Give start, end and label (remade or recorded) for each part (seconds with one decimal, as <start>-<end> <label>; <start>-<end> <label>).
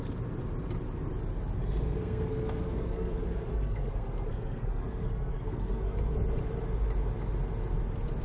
0.0-1.6 recorded; 1.6-6.2 remade; 6.2-8.2 recorded